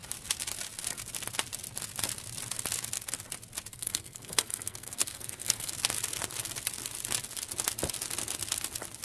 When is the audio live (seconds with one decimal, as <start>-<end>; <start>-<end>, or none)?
0.0-3.7; 5.7-9.0